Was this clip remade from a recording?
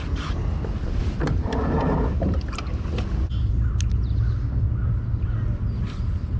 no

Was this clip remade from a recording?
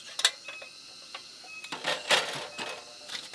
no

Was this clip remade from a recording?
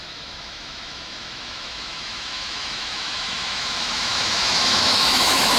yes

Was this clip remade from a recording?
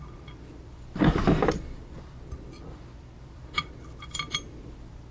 yes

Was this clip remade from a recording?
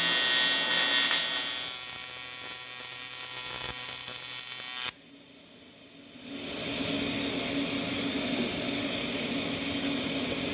no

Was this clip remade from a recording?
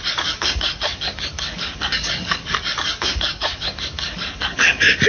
yes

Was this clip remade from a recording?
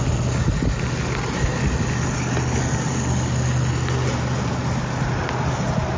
no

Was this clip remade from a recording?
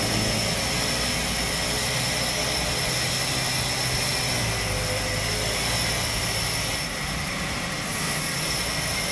no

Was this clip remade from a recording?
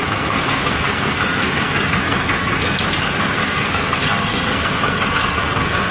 yes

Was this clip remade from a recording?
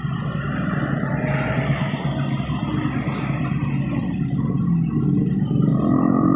no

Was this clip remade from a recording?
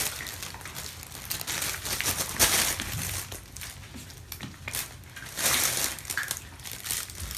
no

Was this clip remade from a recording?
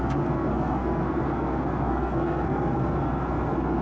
yes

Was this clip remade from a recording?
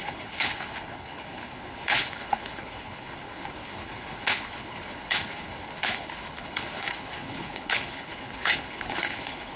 yes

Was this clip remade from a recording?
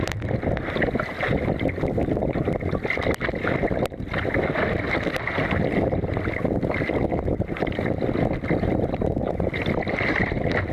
no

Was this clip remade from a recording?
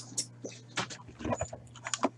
no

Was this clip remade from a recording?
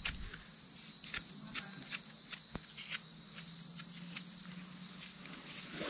no